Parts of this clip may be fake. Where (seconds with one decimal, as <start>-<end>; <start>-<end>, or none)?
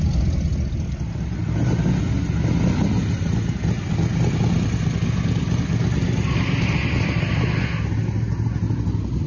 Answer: none